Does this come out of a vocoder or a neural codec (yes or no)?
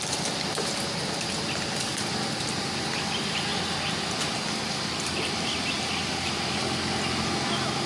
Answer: no